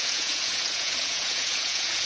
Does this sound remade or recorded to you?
remade